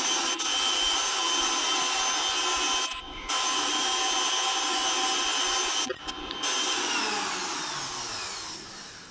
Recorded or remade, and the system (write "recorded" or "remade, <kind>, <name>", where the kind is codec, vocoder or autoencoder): recorded